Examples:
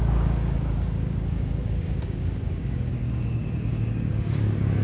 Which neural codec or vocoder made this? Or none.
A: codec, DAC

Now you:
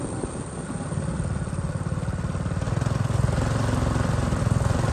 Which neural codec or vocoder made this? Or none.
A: none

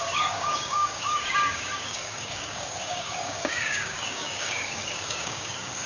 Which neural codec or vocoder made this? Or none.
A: codec, DAC